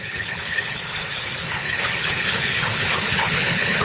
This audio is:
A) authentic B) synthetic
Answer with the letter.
B